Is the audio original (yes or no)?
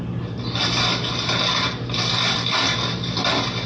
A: yes